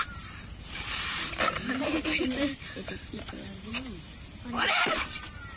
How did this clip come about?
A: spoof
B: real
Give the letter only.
A